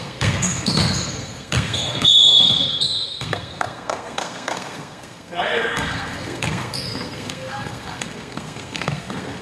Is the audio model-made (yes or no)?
yes